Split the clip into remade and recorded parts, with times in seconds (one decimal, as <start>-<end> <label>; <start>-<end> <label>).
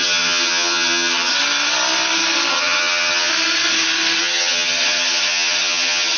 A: 0.0-1.3 remade; 1.3-2.5 recorded; 2.5-3.3 remade; 3.3-4.2 recorded; 4.2-6.2 remade